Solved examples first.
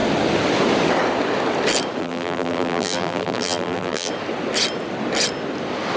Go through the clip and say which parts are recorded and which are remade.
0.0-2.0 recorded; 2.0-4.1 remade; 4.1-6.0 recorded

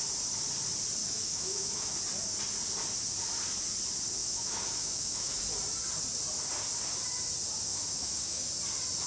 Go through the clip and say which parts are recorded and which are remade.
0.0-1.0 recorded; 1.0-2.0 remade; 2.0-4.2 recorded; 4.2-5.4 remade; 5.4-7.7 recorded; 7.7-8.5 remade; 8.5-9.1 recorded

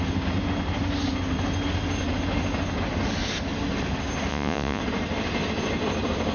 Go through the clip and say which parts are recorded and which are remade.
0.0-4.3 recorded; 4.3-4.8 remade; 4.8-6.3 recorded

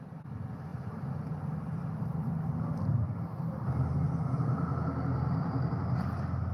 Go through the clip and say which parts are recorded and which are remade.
0.0-6.5 remade

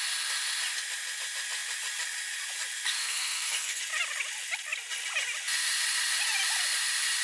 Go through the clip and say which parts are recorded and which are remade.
0.0-3.0 recorded; 3.0-3.8 remade; 3.8-7.2 recorded

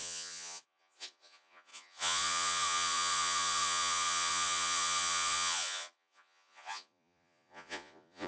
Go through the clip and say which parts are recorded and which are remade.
0.0-8.3 remade

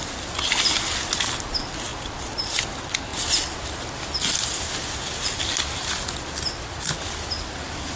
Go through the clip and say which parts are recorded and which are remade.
0.0-1.9 recorded; 1.9-2.6 remade; 2.6-8.0 recorded